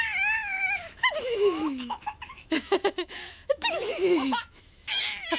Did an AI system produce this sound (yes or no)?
yes